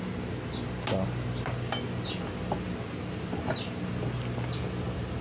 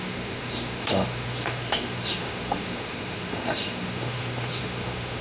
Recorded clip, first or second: first